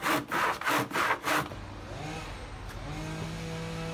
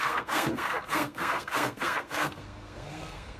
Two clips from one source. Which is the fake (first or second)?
second